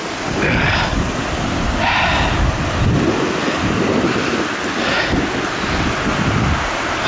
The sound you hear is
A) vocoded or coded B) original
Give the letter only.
B